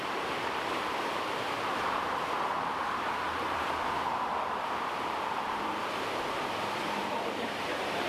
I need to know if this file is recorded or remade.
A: remade